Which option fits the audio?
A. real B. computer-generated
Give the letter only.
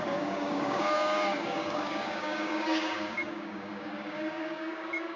B